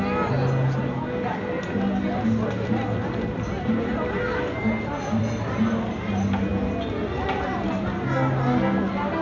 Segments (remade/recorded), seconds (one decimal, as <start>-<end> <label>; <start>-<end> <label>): 0.0-9.2 recorded